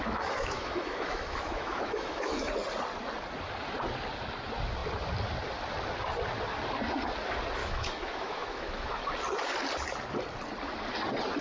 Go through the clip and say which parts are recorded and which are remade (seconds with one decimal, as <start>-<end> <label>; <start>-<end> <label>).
0.0-2.5 remade; 2.5-7.6 recorded; 7.6-9.1 remade; 9.1-11.4 recorded